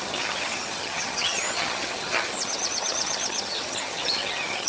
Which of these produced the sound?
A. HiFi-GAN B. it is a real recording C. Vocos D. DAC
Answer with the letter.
A